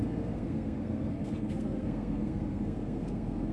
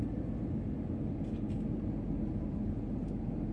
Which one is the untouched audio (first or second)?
second